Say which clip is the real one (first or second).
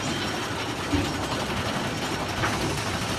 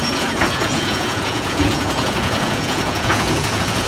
first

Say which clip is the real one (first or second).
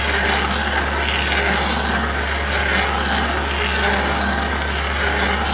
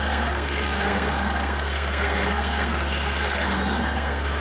first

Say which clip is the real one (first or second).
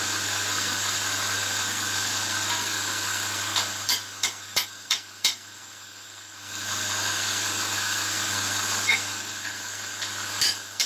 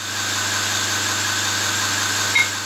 second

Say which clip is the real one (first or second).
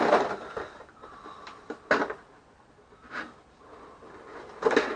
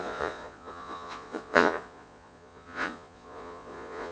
first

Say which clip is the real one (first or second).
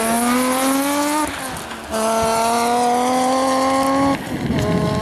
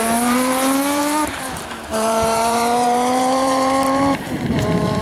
first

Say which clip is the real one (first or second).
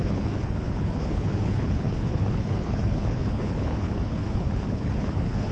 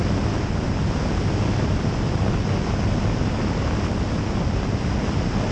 second